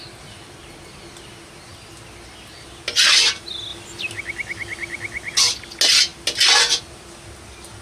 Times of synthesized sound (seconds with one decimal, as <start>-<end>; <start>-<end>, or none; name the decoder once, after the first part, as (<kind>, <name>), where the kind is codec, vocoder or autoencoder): none